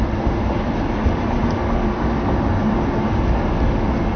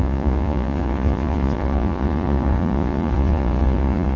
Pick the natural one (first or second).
first